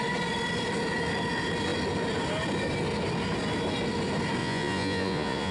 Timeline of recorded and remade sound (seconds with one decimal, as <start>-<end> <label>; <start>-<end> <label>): 0.0-4.4 recorded; 4.4-5.5 remade